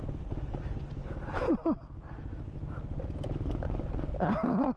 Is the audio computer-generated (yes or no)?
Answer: no